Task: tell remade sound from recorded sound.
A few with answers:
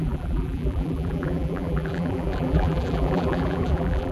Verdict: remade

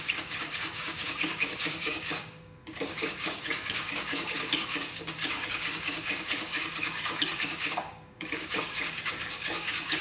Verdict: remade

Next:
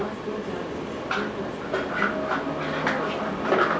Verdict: recorded